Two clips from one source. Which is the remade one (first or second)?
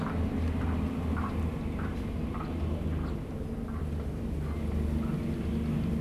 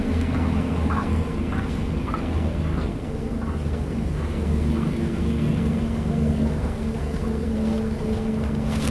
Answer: second